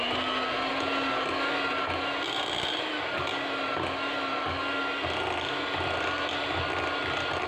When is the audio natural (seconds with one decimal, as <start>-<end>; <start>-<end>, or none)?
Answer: 0.0-7.5